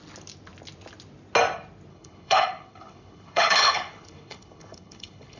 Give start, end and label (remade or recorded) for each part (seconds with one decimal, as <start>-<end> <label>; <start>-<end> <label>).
0.0-1.9 recorded; 1.9-5.4 remade